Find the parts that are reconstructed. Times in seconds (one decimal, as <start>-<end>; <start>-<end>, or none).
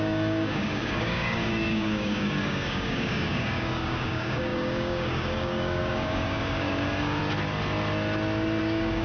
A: 0.0-7.2; 8.6-9.0